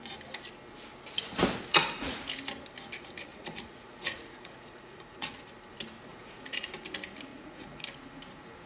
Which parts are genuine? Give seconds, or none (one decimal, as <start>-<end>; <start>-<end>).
0.0-1.7; 2.2-3.3; 5.4-6.1; 6.7-7.3; 7.8-8.7